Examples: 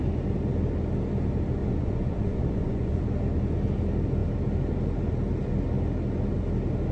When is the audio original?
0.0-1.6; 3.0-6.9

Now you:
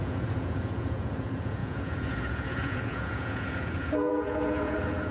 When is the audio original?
none

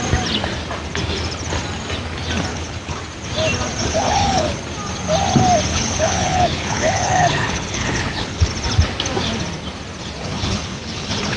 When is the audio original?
0.0-2.5; 3.0-3.8; 4.6-5.7; 8.5-10.2

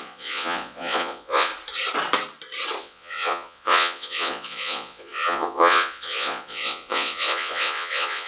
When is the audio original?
1.5-2.8

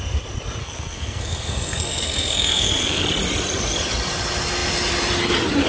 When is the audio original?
0.0-0.6; 3.0-5.7

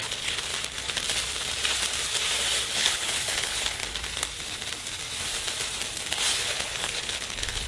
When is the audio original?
0.5-2.7; 3.8-6.3

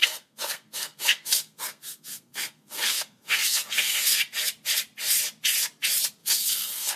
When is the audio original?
4.2-6.2

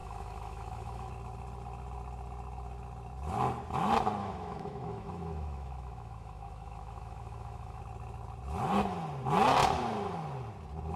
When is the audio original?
1.1-4.2; 7.8-11.0